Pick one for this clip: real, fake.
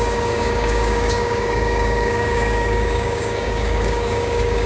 fake